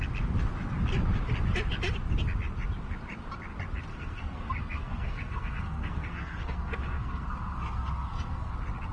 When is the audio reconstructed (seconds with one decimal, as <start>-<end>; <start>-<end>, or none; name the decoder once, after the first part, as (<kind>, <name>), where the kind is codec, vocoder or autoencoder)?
3.9-8.5 (codec, SNAC)